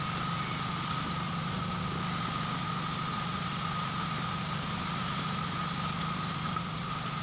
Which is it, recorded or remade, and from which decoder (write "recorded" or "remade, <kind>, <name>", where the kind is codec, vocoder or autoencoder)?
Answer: recorded